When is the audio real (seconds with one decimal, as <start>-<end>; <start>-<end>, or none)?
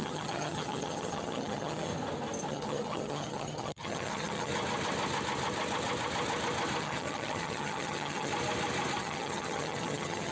1.9-2.5; 4.5-6.8; 8.3-9.0